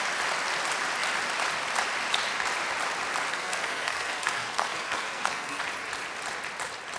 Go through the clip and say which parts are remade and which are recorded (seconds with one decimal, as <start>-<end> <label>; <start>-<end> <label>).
0.0-3.3 recorded; 3.3-5.6 remade; 5.6-7.0 recorded